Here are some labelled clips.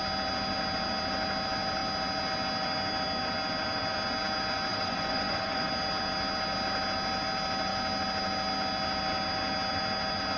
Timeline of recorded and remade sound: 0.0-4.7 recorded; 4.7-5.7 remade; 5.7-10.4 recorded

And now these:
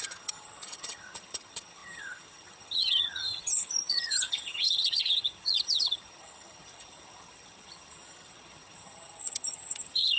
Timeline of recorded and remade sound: 0.0-10.2 remade